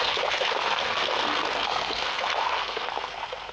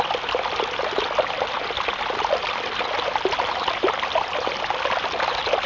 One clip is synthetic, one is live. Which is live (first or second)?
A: second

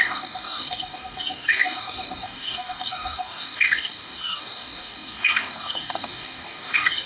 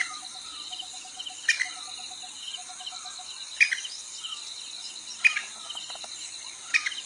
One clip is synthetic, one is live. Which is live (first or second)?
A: second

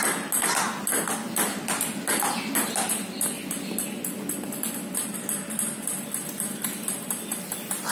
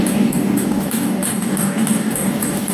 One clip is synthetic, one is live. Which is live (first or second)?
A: first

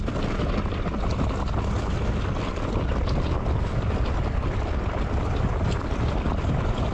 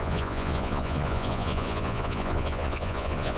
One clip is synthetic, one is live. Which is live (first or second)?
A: first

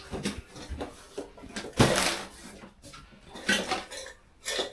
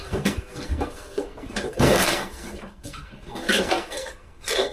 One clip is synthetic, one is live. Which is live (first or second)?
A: first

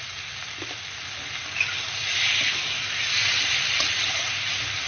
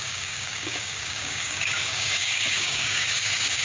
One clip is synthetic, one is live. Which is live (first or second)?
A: first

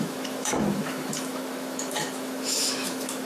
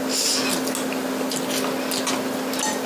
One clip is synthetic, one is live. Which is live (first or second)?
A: second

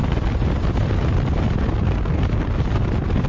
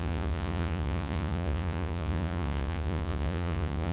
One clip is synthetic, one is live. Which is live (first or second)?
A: first